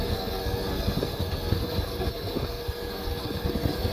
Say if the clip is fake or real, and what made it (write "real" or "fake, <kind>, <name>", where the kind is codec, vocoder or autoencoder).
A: fake, codec, SNAC